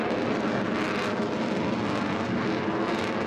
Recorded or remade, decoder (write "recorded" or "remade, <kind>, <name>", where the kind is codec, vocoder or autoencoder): recorded